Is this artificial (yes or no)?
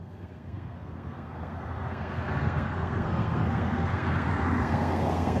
yes